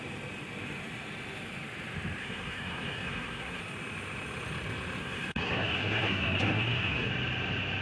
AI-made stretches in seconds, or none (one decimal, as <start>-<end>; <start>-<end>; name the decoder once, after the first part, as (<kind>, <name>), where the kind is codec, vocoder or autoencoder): 2.2-3.6 (codec, SNAC); 5.0-7.1